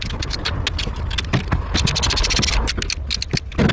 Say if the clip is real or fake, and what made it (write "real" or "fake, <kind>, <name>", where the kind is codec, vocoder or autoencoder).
real